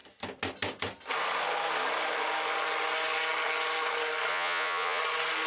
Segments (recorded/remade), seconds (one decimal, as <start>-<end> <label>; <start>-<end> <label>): 0.0-4.3 recorded; 4.3-5.0 remade; 5.0-5.5 recorded

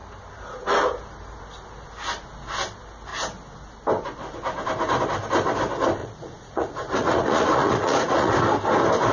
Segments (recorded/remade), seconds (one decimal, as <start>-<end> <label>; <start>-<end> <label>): 0.0-6.0 recorded; 6.0-8.3 remade; 8.3-9.1 recorded